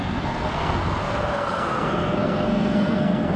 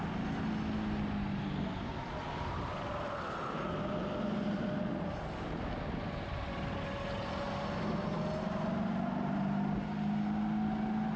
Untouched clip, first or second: second